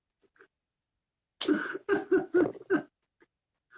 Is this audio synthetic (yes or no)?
no